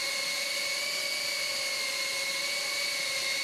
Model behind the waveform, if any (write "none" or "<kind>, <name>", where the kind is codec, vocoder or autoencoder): none